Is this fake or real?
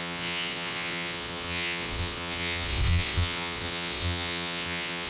fake